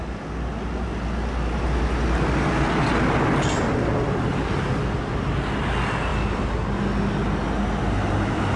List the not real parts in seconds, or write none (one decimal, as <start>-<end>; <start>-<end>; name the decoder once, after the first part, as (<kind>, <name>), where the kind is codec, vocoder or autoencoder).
none